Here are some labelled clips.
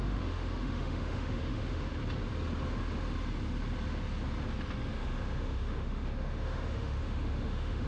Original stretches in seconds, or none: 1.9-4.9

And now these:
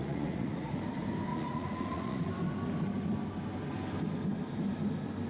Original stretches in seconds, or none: 0.8-1.3; 2.3-5.3